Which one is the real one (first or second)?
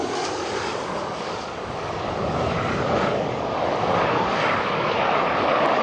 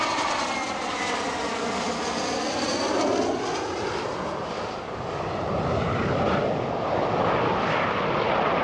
second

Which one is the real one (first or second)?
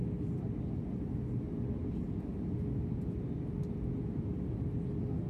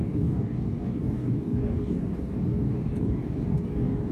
first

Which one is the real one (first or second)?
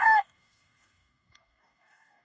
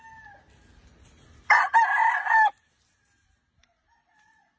second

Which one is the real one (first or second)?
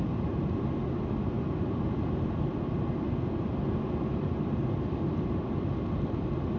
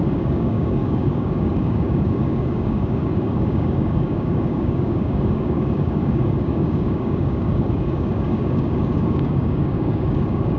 first